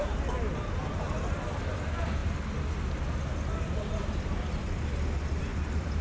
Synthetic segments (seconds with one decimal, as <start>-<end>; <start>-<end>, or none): none